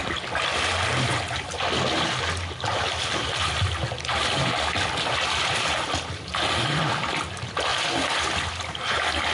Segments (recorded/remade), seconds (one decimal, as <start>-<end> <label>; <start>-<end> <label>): 0.0-9.3 recorded